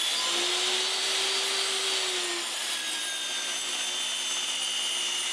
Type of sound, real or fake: real